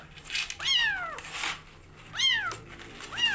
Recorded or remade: recorded